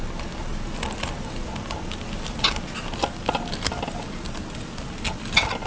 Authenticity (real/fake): real